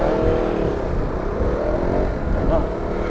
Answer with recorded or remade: recorded